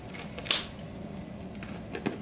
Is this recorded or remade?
recorded